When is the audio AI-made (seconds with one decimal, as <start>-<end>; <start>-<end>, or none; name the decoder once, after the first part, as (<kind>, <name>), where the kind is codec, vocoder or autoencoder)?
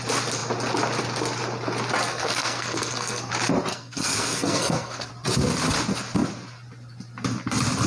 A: 2.1-3.3 (codec, SNAC); 3.7-5.1